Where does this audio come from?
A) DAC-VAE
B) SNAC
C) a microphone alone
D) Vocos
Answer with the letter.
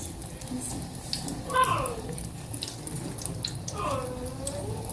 C